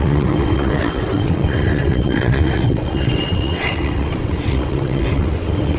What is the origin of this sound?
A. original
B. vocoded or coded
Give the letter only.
B